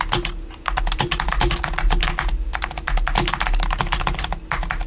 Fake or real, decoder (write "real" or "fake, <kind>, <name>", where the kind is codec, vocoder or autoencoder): real